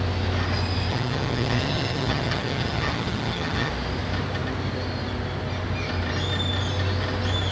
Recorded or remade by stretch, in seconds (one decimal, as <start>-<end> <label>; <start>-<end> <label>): 0.0-0.9 recorded; 0.9-3.7 remade; 3.7-7.5 recorded